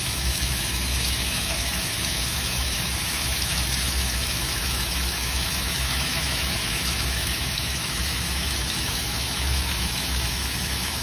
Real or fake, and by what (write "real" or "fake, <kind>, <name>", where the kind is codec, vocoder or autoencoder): fake, autoencoder, DAC-VAE